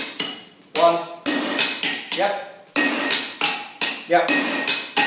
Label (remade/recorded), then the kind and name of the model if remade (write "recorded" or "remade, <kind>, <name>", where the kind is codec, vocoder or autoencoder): recorded